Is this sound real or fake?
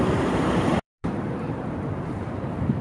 fake